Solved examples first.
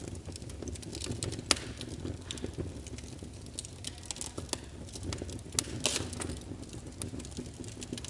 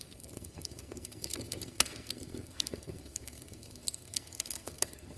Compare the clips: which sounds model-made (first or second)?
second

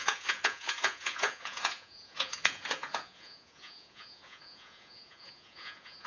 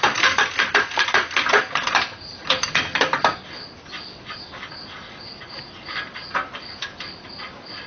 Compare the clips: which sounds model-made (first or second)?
first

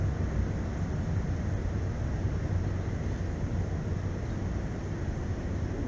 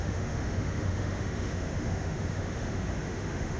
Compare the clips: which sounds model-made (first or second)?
second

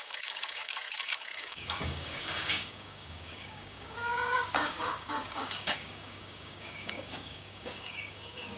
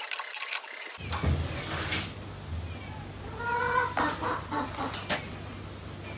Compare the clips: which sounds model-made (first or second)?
first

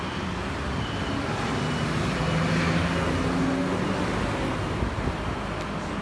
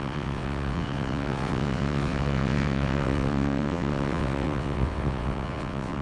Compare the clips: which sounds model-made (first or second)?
second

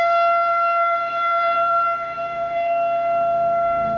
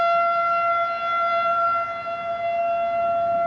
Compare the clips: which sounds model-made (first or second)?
first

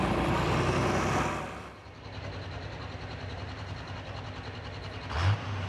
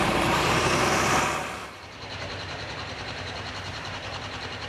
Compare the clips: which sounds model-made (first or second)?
second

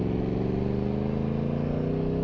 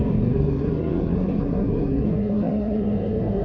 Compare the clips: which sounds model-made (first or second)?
second